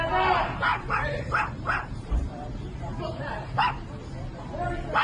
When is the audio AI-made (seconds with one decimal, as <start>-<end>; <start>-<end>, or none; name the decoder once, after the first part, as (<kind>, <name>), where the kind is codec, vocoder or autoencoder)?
0.7-3.7 (vocoder, BigVGAN v2)